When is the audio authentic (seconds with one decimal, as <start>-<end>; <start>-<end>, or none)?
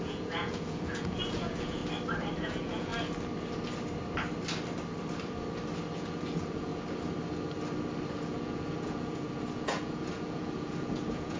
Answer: 1.8-2.4; 2.9-5.9; 6.7-8.1